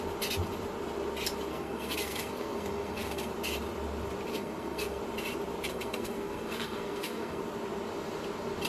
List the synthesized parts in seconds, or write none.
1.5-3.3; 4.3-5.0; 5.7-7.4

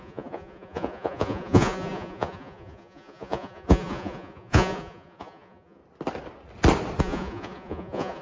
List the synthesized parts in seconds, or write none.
0.0-5.8; 7.0-8.2

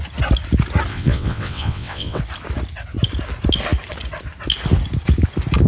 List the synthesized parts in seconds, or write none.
0.9-2.2

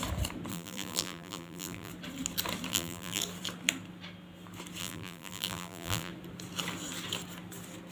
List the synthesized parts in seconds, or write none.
0.5-1.9; 2.7-3.2; 4.8-6.1

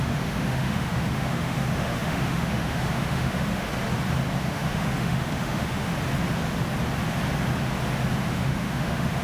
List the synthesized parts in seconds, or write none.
0.0-3.7; 4.4-5.9; 8.3-9.2